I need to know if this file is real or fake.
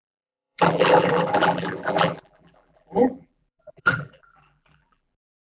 fake